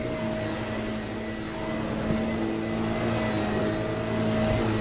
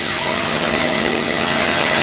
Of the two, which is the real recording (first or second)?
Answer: first